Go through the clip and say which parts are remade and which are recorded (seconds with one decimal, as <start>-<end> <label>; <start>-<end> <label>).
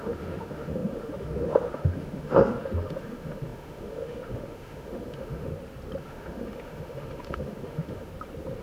0.0-5.5 remade; 5.5-6.0 recorded; 6.0-8.1 remade; 8.1-8.6 recorded